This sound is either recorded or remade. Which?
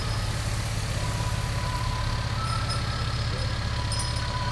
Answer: recorded